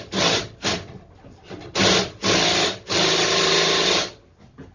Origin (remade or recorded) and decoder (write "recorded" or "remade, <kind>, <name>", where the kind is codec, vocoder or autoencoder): recorded